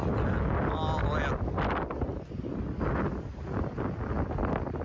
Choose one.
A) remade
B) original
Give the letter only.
B